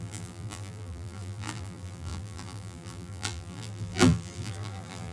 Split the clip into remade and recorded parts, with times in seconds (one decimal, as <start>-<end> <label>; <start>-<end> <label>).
0.0-5.1 remade